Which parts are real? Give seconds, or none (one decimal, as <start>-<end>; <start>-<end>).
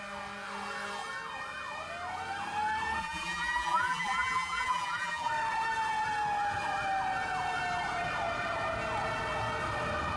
0.0-3.0; 5.3-10.2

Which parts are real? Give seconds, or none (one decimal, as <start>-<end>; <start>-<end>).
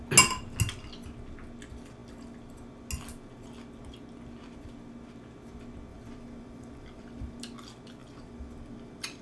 0.0-5.9; 7.4-8.0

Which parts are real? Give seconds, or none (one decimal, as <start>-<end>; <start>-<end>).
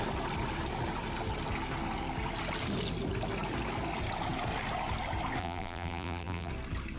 0.0-5.4; 6.5-7.0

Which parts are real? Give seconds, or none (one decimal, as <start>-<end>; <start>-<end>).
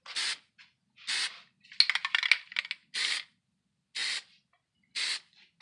0.0-5.6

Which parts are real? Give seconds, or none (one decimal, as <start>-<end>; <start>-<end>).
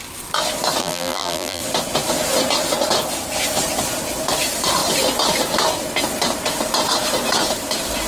0.0-0.8; 1.6-8.1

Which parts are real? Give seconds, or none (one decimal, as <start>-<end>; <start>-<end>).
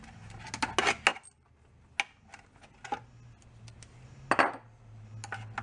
0.0-5.6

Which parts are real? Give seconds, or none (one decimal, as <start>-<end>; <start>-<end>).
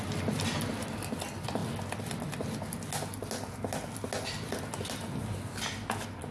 0.0-6.3